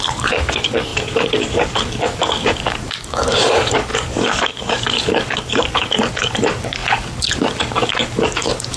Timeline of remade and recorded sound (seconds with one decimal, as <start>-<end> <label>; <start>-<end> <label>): 0.0-8.8 remade